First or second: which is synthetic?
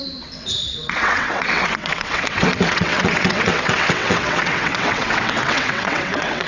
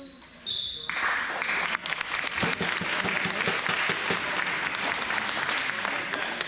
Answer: first